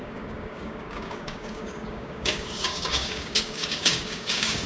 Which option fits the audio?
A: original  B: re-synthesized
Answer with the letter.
B